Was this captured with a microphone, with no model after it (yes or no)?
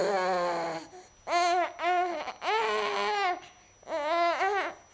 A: yes